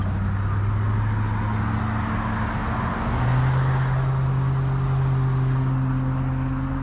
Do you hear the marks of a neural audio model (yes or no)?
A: no